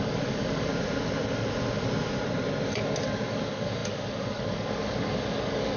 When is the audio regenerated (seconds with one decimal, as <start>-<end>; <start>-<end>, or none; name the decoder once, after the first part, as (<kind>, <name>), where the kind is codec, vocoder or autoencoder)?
0.0-0.7 (codec, DAC); 3.3-5.8